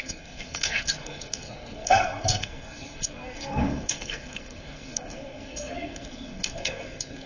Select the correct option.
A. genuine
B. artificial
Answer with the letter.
B